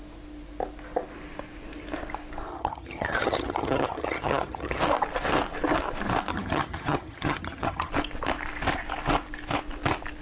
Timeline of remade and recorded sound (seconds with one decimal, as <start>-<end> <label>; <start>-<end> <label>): 0.0-2.5 recorded; 2.5-4.8 remade; 4.8-6.3 recorded; 6.3-7.9 remade; 7.9-10.2 recorded